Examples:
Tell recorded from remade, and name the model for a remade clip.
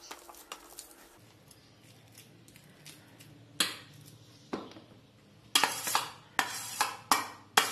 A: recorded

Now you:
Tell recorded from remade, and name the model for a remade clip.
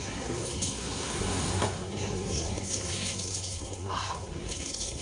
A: remade, codec, SNAC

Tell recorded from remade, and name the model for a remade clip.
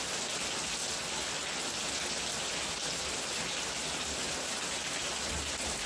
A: recorded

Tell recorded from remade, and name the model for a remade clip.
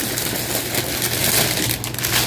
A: recorded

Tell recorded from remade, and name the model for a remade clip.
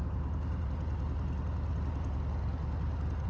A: recorded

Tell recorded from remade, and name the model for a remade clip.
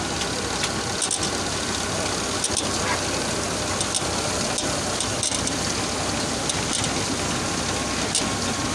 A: recorded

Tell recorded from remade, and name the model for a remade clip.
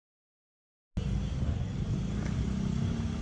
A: recorded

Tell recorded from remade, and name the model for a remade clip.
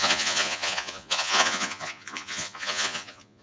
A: remade, vocoder, Vocos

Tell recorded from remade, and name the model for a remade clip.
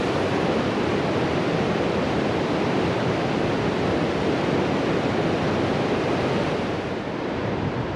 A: remade, vocoder, BigVGAN v2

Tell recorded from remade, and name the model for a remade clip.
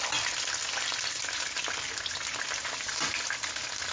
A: recorded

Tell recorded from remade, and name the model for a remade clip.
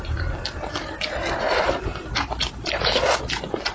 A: recorded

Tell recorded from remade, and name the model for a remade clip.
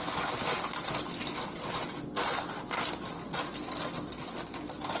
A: recorded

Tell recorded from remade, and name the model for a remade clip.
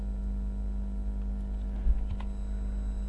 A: recorded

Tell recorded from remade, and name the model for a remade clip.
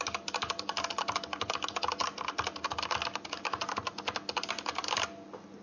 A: recorded